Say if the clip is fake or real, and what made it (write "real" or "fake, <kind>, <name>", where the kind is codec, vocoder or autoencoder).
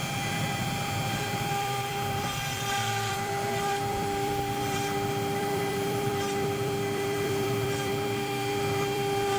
fake, vocoder, BigVGAN v2